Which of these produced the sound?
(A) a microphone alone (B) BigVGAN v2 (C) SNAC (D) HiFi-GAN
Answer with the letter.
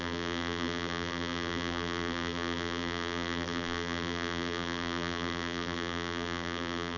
B